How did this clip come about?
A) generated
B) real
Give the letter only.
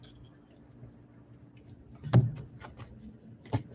B